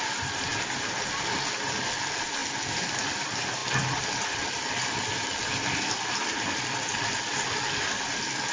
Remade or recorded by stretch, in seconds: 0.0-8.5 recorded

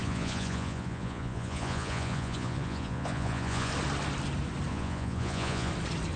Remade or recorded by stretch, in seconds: 0.0-3.7 remade; 3.7-4.7 recorded; 4.7-5.7 remade; 5.7-6.2 recorded

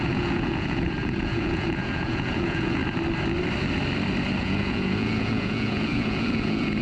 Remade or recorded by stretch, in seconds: 0.0-2.8 remade; 2.8-4.4 recorded; 4.4-6.8 remade

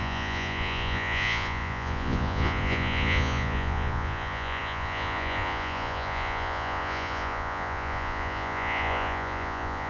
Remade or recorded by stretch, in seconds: 0.0-9.9 remade

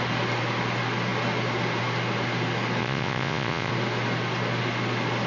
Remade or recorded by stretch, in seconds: 0.0-2.8 recorded; 2.8-3.7 remade; 3.7-5.3 recorded

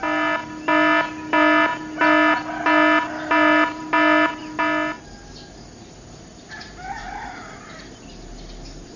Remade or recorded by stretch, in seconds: 0.0-7.0 recorded; 7.0-7.6 remade; 7.6-9.0 recorded

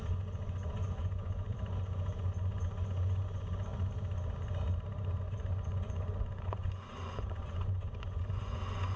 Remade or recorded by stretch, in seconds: 0.0-3.7 remade; 3.7-5.2 recorded; 5.2-9.0 remade

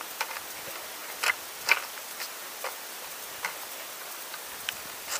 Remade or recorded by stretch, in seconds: 0.0-5.2 recorded